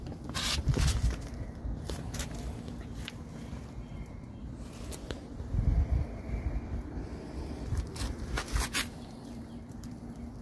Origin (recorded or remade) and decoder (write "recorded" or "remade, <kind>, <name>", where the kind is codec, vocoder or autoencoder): remade, vocoder, BigVGAN v2